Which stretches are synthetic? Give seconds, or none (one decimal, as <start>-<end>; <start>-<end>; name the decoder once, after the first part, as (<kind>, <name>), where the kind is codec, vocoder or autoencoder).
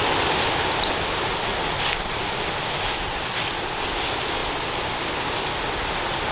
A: none